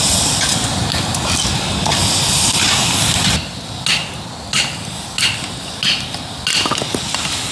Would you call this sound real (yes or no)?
yes